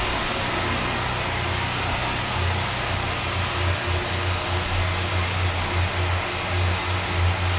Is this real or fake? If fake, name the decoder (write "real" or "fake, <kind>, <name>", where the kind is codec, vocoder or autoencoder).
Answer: real